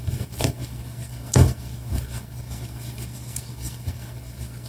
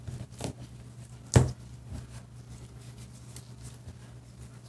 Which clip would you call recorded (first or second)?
second